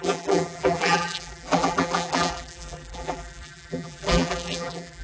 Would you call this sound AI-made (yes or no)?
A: yes